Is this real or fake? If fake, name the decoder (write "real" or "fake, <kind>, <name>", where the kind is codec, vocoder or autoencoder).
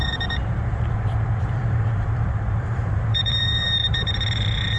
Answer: fake, vocoder, BigVGAN v2